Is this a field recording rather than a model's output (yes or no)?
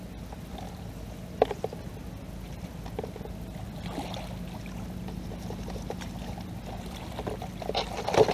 yes